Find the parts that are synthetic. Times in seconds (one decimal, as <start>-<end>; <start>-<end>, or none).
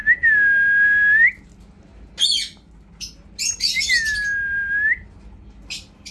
none